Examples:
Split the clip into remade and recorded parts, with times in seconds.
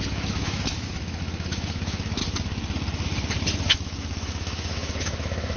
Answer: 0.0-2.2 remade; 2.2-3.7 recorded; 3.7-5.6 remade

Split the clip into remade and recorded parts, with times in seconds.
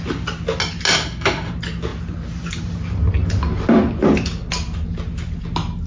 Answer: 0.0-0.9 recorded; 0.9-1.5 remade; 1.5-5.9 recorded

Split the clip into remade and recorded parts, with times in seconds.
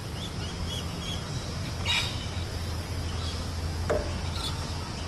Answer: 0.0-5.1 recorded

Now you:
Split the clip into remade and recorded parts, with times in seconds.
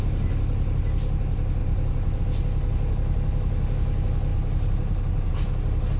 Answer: 0.0-1.6 recorded; 1.6-2.2 remade; 2.2-4.3 recorded; 4.3-5.3 remade; 5.3-6.0 recorded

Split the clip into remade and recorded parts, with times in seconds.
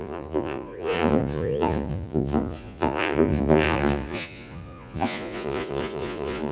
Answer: 0.0-6.5 remade